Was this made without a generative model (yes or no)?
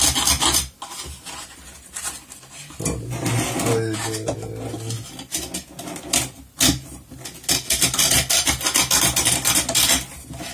yes